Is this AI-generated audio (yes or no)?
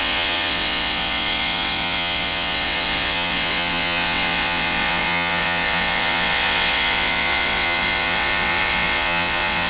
yes